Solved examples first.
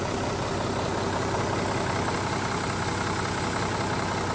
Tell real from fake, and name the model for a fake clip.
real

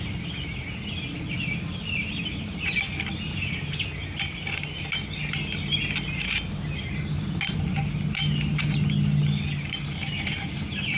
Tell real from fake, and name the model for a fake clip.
real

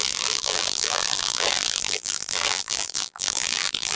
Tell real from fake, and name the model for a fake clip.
fake, vocoder, BigVGAN v2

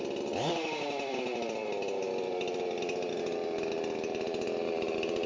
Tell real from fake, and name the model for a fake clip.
real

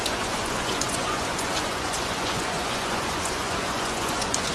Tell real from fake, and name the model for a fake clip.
fake, vocoder, Vocos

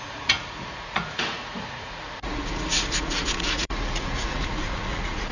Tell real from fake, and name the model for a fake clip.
fake, vocoder, Vocos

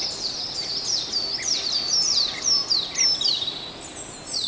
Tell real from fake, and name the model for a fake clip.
real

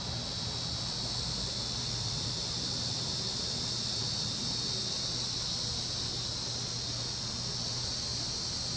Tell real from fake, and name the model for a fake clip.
real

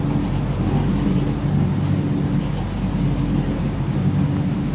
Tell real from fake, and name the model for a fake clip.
real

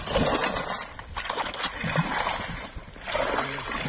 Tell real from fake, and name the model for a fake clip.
real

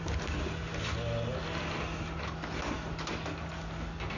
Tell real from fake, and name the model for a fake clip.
real